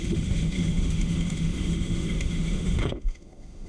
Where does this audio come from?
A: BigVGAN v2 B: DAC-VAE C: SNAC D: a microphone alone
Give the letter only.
B